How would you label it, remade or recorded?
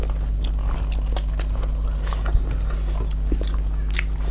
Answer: recorded